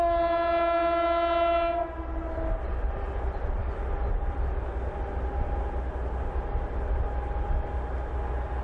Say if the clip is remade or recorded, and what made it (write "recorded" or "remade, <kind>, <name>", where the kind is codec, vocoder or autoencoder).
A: recorded